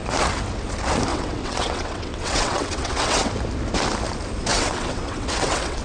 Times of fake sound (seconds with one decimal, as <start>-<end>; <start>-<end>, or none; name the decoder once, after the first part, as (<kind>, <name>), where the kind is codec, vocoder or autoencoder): 1.1-3.3 (vocoder, WaveNeXt); 4.5-5.8